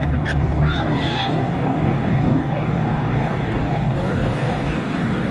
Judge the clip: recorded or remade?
remade